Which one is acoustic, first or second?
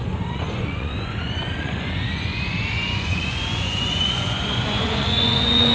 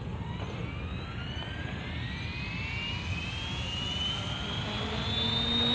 second